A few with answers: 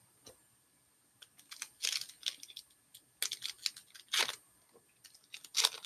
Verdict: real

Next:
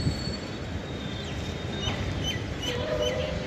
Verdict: fake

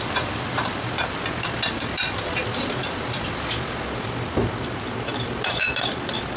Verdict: fake